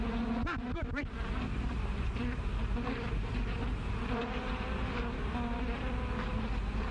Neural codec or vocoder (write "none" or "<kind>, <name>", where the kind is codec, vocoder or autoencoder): none